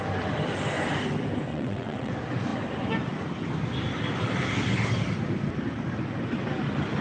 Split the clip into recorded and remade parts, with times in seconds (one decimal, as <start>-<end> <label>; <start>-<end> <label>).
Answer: 0.0-1.5 recorded; 1.5-2.1 remade; 2.1-7.0 recorded